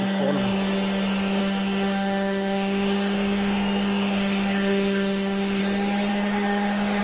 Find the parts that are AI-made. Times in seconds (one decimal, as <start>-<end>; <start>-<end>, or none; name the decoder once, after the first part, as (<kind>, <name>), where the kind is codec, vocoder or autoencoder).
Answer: 1.4-5.6 (autoencoder, DAC-VAE); 6.1-7.0